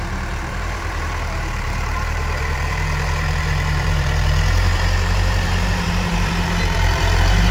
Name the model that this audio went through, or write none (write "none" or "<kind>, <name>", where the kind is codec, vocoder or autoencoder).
vocoder, BigVGAN v2